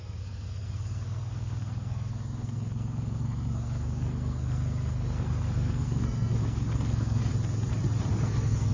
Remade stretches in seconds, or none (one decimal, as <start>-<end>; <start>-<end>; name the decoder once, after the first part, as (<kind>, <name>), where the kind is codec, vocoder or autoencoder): 0.0-7.3 (codec, SNAC); 8.1-8.7